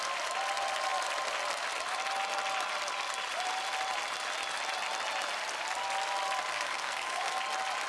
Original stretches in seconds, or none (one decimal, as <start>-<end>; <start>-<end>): 0.0-6.5; 7.4-7.9